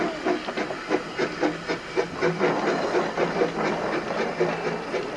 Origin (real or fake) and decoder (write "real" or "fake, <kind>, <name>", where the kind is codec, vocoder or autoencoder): real